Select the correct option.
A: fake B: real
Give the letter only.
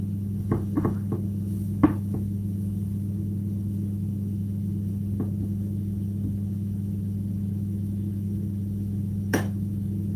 A